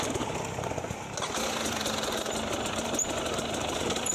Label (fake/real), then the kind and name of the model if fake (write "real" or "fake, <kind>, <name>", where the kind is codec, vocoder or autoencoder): real